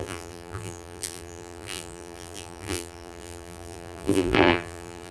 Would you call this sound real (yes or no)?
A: no